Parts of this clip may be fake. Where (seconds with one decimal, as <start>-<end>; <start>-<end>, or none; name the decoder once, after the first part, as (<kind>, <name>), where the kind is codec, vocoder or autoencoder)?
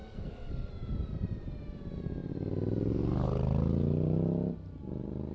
0.0-0.7 (codec, SNAC)